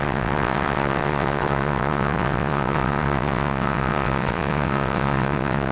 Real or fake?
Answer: fake